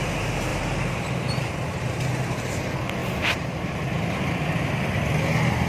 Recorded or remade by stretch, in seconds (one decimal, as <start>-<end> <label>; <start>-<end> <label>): 0.0-0.5 recorded; 0.5-1.5 remade; 1.5-3.0 recorded; 3.0-3.8 remade; 3.8-5.7 recorded